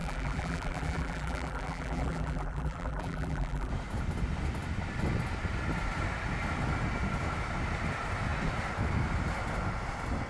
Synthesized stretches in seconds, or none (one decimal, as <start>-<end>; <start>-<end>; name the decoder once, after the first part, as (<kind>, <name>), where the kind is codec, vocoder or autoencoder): 0.0-3.7 (vocoder, BigVGAN v2)